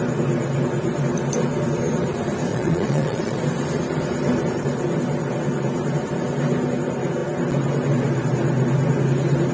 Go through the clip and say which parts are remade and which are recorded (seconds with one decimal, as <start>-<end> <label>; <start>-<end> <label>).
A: 0.0-2.5 recorded; 2.5-3.4 remade; 3.4-9.5 recorded